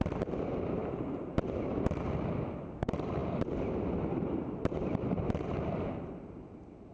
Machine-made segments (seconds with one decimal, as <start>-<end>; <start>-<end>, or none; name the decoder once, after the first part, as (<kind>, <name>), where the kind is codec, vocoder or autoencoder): 0.0-0.8 (vocoder, BigVGAN v2); 2.6-6.9